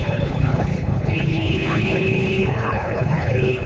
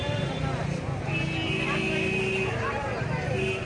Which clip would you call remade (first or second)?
first